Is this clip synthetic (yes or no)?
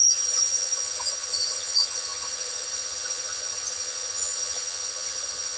yes